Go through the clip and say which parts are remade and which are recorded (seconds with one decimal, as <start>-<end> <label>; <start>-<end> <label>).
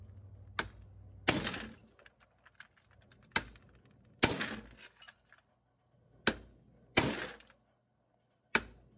0.0-9.0 recorded